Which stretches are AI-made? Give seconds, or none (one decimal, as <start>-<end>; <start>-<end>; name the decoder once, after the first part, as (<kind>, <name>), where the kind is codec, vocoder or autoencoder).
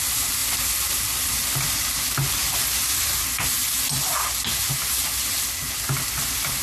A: none